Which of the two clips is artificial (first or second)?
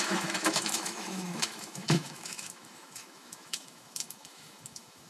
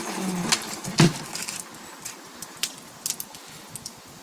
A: first